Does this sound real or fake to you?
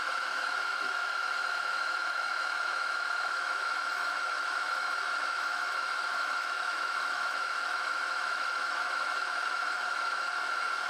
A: fake